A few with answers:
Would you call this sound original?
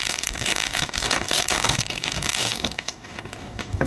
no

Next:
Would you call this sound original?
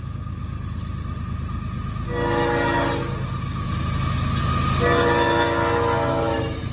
yes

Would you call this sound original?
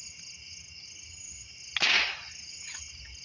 yes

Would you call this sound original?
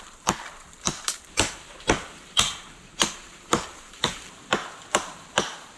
no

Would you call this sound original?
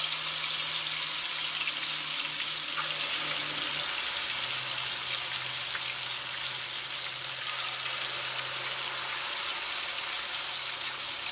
yes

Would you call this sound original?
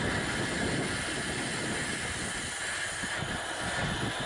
yes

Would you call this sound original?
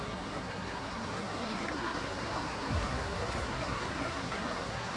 no